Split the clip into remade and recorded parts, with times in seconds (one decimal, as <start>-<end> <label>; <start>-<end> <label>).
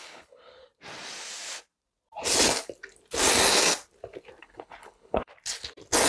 0.0-0.7 remade; 0.7-4.4 recorded; 4.4-5.3 remade; 5.3-6.1 recorded